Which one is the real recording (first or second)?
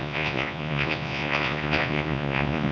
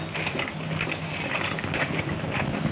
second